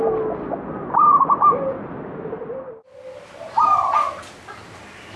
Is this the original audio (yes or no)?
yes